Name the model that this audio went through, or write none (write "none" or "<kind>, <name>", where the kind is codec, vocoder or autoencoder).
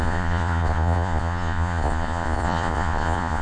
vocoder, Vocos